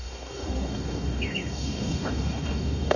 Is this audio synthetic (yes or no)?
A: yes